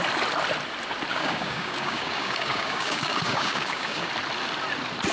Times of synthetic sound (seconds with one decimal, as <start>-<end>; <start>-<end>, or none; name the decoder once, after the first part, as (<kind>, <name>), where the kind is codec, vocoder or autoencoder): 1.1-4.1 (codec, DAC)